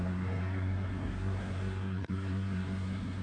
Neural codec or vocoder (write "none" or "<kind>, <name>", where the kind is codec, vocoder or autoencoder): codec, SNAC